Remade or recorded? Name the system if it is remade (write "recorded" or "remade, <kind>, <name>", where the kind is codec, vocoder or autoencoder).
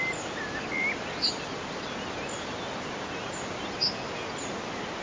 recorded